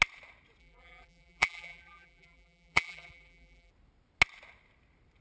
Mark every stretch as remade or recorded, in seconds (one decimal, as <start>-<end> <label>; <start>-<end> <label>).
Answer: 0.0-0.6 recorded; 0.6-3.7 remade; 3.7-5.2 recorded